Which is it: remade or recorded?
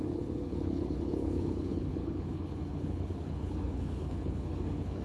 remade